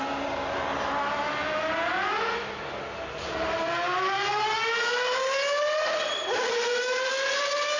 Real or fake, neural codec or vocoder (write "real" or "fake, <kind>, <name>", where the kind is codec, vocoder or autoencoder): real